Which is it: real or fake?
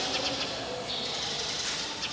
real